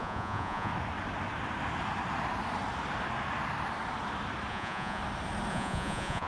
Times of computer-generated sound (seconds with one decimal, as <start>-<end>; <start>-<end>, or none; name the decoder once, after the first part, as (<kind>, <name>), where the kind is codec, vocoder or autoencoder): 0.0-0.7 (vocoder, Vocos); 4.5-5.0; 5.5-6.3